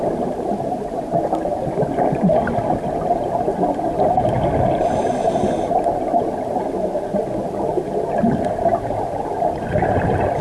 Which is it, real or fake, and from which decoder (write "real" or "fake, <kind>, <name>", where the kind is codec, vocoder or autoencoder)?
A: real